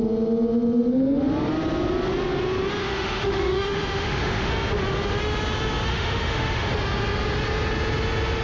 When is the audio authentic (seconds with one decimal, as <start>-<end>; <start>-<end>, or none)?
0.0-2.8; 4.5-5.9; 6.7-8.4